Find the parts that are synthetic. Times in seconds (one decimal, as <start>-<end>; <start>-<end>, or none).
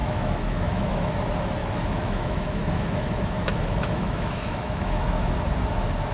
0.0-1.1; 1.6-5.3